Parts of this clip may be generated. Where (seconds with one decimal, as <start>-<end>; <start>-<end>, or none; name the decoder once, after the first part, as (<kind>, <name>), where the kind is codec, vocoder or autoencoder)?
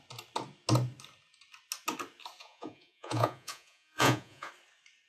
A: 2.4-4.5 (vocoder, Vocos)